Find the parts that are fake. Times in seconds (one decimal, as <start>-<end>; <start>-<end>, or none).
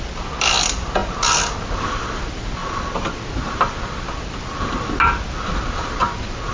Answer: 0.0-1.0; 1.6-2.6